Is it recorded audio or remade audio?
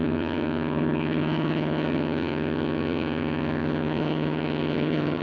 remade